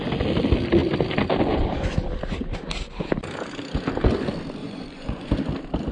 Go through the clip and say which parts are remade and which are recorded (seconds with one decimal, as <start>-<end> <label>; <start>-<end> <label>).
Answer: 0.0-4.6 recorded; 4.6-5.3 remade; 5.3-5.9 recorded